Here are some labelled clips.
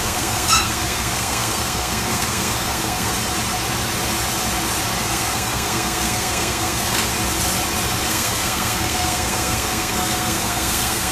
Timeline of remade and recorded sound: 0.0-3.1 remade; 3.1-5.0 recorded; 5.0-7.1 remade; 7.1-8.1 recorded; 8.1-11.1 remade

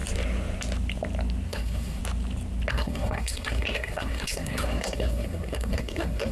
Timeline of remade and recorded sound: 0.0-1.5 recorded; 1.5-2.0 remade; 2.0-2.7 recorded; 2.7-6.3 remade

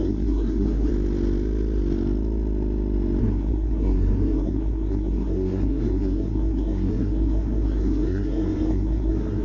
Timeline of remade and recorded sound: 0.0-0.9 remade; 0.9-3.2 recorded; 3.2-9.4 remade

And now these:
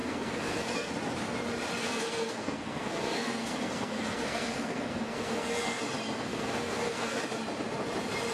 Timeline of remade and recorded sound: 0.0-0.9 remade; 0.9-1.8 recorded; 1.8-5.8 remade; 5.8-6.3 recorded; 6.3-7.2 remade; 7.2-8.3 recorded

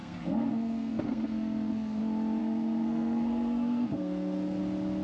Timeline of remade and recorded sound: 0.0-2.0 remade; 2.0-2.4 recorded; 2.4-4.6 remade; 4.6-5.0 recorded

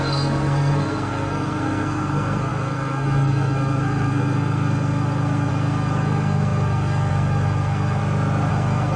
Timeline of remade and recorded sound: 0.0-8.0 remade; 8.0-8.5 recorded; 8.5-9.0 remade

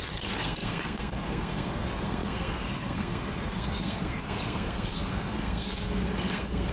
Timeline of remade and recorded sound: 0.0-6.7 remade

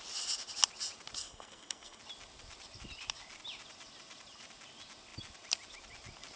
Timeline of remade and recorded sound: 0.0-1.2 recorded; 1.2-2.0 remade; 2.0-6.4 recorded